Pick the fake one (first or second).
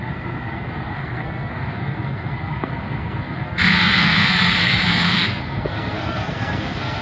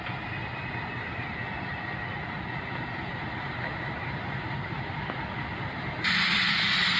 first